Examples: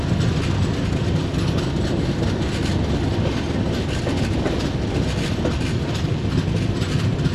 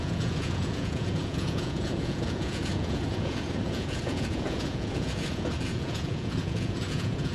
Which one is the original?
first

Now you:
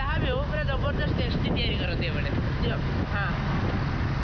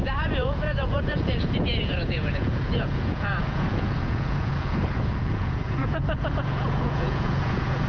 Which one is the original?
first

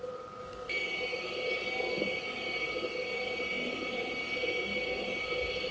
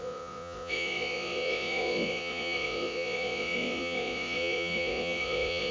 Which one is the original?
first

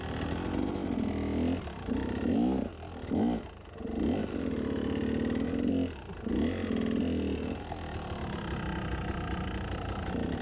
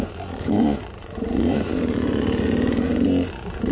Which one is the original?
first